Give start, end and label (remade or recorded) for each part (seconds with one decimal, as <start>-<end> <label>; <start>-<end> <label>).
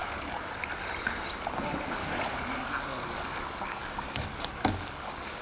0.0-0.5 remade; 0.5-2.0 recorded; 2.0-5.4 remade